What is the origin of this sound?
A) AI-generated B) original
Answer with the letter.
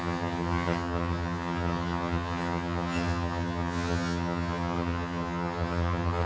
A